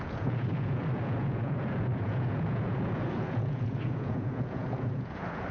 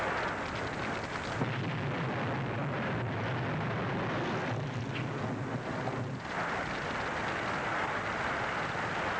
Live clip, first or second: second